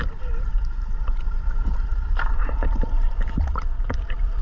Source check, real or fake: fake